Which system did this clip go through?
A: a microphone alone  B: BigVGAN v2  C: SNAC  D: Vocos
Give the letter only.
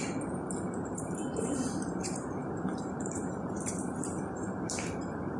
B